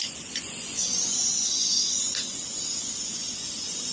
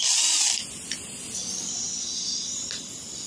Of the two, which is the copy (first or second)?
first